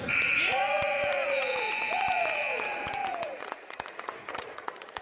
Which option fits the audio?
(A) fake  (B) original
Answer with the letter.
A